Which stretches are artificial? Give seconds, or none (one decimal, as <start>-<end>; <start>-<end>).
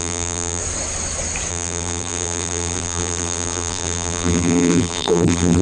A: 0.0-0.6; 1.5-5.6